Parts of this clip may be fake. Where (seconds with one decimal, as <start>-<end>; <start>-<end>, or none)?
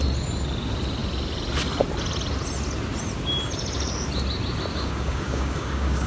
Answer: 4.7-6.1